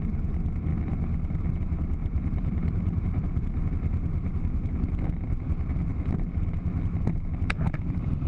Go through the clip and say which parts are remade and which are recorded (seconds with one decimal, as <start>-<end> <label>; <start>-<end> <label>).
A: 0.0-2.0 recorded; 2.0-3.6 remade; 3.6-4.1 recorded; 4.1-4.9 remade; 4.9-8.3 recorded